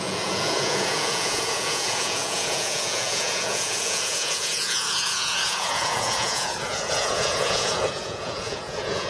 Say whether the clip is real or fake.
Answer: fake